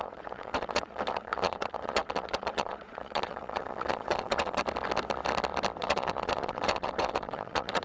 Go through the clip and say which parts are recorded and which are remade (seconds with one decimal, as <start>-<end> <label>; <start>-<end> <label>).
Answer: 0.0-4.6 remade; 4.6-5.8 recorded; 5.8-7.8 remade